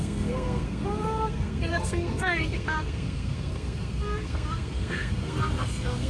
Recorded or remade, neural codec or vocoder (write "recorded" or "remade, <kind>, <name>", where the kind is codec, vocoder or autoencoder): remade, codec, SNAC